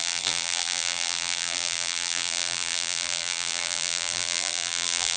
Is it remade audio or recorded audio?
remade